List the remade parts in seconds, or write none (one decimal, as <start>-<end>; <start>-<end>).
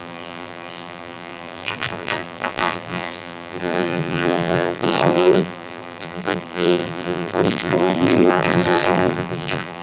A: 0.0-9.8